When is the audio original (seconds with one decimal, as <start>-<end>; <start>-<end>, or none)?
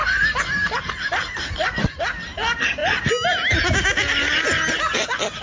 2.0-5.4